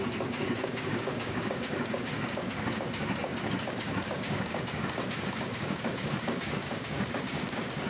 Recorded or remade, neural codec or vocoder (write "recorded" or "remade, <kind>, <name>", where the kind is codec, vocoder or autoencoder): remade, codec, DAC